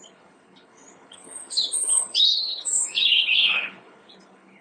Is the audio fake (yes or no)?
yes